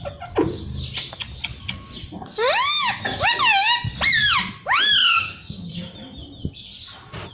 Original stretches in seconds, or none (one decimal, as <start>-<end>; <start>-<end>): 0.0-5.0; 5.7-7.3